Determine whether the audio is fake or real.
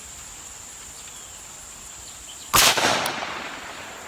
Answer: real